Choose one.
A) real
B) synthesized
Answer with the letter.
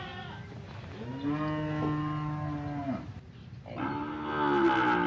A